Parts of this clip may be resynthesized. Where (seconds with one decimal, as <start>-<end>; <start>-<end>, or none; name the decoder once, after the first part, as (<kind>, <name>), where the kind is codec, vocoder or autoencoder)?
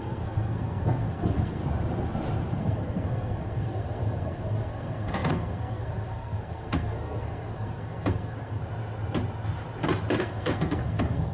0.0-1.6 (codec, SNAC); 2.6-8.6; 10.2-11.3